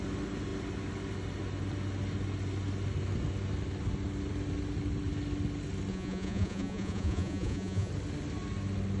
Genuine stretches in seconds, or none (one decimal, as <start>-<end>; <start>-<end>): 0.0-5.9; 7.9-9.0